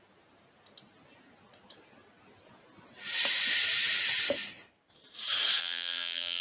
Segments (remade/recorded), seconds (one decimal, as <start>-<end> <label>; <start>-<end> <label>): 0.0-5.6 recorded; 5.6-6.4 remade